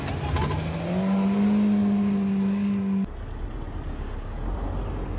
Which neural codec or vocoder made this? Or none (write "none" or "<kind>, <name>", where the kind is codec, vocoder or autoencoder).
none